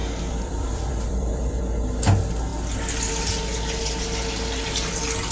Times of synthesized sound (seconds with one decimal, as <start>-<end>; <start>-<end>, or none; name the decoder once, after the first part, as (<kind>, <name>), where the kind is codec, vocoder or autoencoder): 0.0-1.6 (vocoder, BigVGAN v2)